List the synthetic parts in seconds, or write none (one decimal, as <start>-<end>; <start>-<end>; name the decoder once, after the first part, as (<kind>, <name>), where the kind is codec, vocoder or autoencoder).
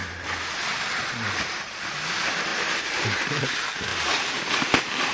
0.0-1.7 (vocoder, BigVGAN v2); 2.5-3.4; 3.9-4.5